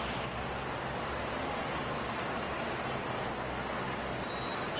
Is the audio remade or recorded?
recorded